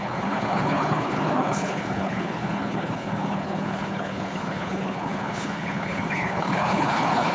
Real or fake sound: fake